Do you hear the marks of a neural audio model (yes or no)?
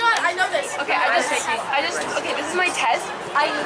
no